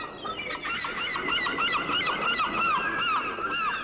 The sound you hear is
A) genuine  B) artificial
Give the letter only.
A